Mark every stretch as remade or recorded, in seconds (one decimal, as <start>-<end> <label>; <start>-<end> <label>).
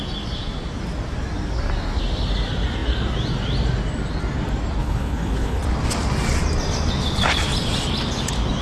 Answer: 0.0-4.8 recorded; 4.8-5.6 remade; 5.6-8.6 recorded